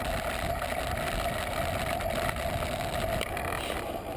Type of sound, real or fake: real